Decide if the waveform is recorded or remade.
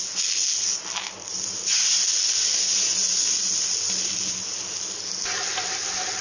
recorded